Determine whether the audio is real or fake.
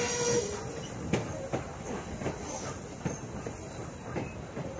real